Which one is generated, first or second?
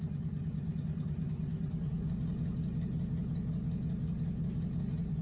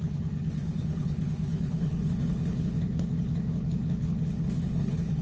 second